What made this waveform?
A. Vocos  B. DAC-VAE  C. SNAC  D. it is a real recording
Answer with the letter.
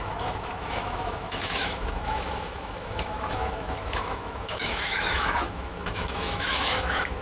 B